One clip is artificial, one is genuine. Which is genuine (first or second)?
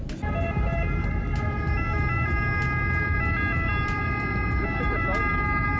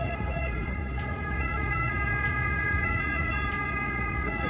first